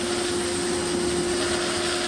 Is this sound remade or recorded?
recorded